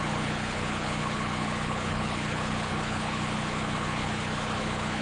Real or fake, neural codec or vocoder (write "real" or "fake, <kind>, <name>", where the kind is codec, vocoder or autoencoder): fake, codec, HILCodec